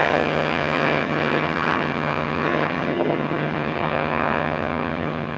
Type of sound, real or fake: fake